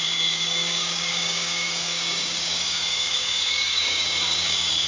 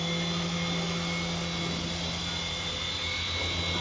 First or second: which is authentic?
second